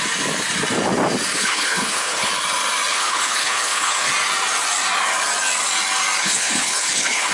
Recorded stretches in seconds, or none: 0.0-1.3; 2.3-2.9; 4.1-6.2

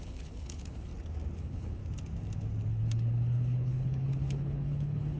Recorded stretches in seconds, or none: 0.9-1.4; 1.8-2.7

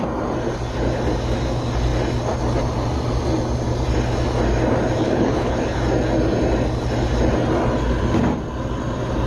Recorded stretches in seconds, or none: 0.0-5.0; 5.8-9.3

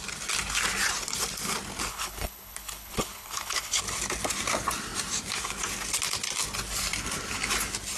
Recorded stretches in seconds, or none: 0.0-1.9; 3.8-8.0

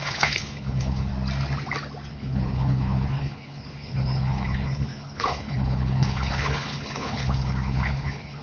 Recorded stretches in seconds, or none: 1.1-2.1

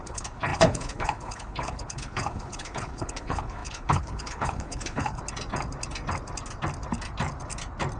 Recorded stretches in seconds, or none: 5.2-8.0

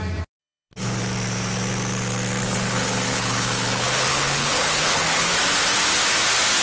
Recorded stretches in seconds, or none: 0.0-0.4; 1.0-2.4; 5.3-6.6